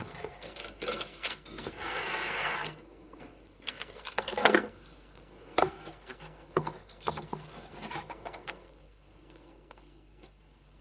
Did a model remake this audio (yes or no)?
yes